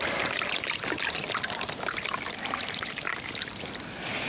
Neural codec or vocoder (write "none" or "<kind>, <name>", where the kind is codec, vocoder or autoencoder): none